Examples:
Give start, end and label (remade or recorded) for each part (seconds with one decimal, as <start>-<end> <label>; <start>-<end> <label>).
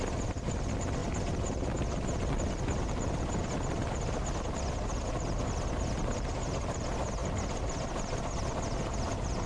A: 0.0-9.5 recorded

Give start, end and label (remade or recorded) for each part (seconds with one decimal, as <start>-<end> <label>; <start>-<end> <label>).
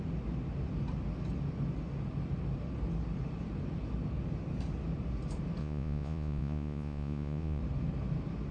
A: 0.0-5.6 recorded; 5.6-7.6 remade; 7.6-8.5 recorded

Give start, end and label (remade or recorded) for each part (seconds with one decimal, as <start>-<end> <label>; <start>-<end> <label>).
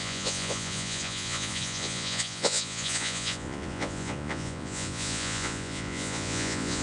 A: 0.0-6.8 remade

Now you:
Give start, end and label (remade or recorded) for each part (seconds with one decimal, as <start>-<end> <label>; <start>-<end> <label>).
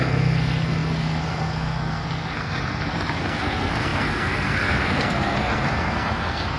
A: 0.0-6.6 remade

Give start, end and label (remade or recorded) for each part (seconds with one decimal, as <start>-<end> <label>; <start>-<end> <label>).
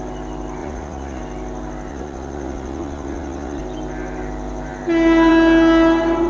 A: 0.0-0.6 recorded; 0.6-1.2 remade; 1.2-1.9 recorded; 1.9-3.6 remade; 3.6-6.3 recorded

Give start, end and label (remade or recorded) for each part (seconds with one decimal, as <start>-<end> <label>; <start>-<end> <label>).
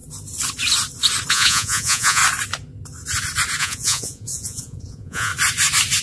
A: 0.0-1.3 recorded; 1.3-2.2 remade; 2.2-3.6 recorded; 3.6-5.3 remade; 5.3-6.0 recorded